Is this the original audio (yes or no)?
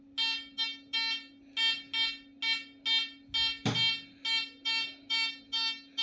yes